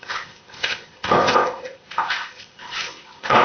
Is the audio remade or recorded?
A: remade